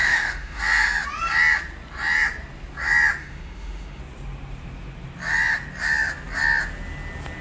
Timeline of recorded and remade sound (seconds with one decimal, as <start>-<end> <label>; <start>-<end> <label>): 0.0-0.6 remade; 0.6-3.2 recorded; 3.2-4.0 remade; 4.0-7.4 recorded